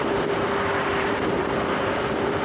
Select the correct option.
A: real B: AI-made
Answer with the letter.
B